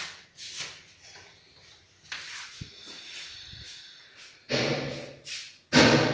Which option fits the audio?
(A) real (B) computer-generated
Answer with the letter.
A